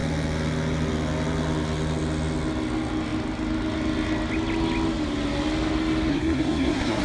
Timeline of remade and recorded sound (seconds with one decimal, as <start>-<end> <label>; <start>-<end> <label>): 0.0-6.1 recorded; 6.1-7.0 remade